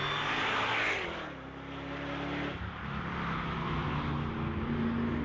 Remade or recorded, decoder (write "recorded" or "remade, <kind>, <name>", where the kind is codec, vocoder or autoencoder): recorded